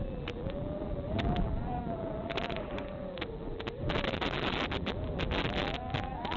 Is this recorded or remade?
remade